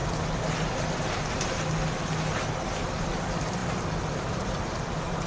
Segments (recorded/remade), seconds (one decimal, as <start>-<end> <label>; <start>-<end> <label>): 0.0-5.3 recorded

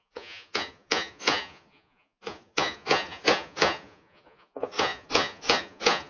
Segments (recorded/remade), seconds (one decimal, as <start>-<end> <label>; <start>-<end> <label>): 0.0-6.1 remade

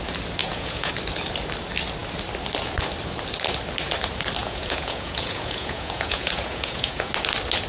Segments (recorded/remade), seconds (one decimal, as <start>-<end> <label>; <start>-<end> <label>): 0.0-0.4 recorded; 0.4-0.9 remade; 0.9-4.4 recorded; 4.4-7.1 remade; 7.1-7.7 recorded

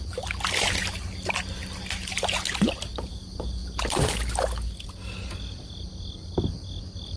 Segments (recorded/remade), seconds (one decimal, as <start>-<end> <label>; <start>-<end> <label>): 0.0-7.2 recorded

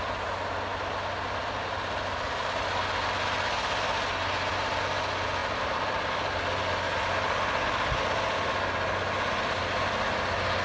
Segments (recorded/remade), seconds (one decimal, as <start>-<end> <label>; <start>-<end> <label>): 0.0-10.6 recorded

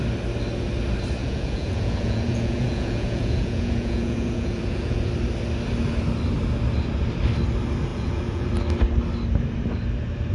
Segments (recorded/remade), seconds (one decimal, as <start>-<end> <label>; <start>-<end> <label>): 0.0-1.2 recorded; 1.2-5.1 remade; 5.1-7.9 recorded; 7.9-8.5 remade; 8.5-10.3 recorded